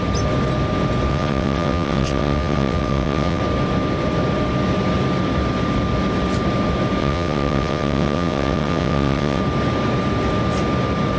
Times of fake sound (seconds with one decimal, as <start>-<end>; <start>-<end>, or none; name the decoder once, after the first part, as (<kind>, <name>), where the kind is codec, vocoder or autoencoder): 1.1-3.4 (vocoder, WaveNeXt); 7.0-9.4